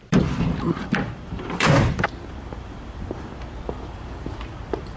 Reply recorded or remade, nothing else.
remade